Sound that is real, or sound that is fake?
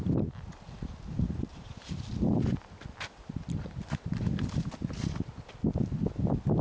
real